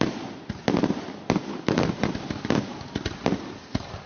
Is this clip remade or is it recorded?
remade